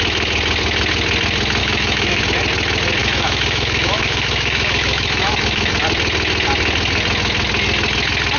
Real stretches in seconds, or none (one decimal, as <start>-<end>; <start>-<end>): 0.0-1.6; 2.2-3.0; 5.7-8.4